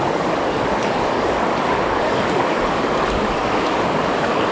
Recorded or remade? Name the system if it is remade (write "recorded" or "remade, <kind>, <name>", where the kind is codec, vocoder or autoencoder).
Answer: remade, codec, DAC